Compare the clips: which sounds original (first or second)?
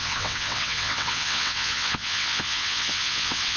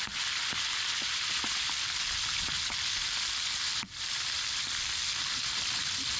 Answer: second